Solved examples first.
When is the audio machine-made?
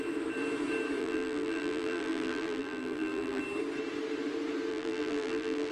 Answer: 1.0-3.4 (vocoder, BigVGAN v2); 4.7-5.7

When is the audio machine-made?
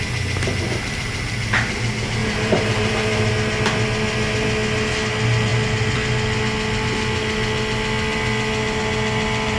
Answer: 2.2-3.3 (vocoder, BigVGAN v2)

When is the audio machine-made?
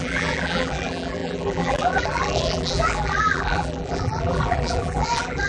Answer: 0.0-5.5 (vocoder, BigVGAN v2)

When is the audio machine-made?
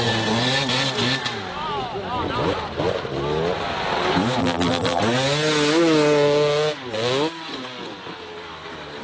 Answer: 4.4-5.0 (vocoder, BigVGAN v2)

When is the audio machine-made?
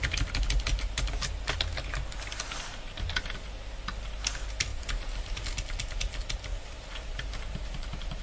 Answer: 4.7-5.4 (vocoder, BigVGAN v2); 6.5-8.2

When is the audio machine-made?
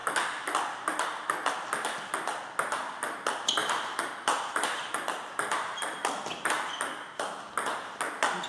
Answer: 3.6-6.7 (vocoder, BigVGAN v2)